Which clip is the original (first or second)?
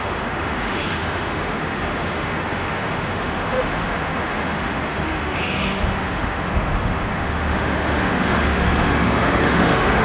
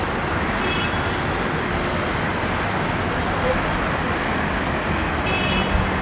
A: second